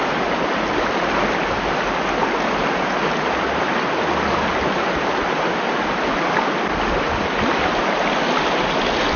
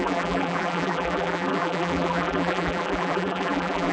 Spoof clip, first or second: second